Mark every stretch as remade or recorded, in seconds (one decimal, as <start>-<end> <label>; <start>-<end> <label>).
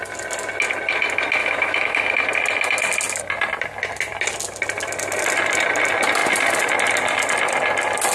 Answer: 0.0-1.4 recorded; 1.4-2.1 remade; 2.1-8.1 recorded